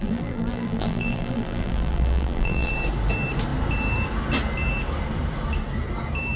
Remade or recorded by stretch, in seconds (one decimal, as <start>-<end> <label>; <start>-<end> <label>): 0.0-2.7 remade; 2.7-6.4 recorded